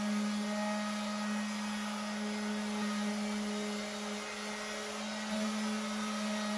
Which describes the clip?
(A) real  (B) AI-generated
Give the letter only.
A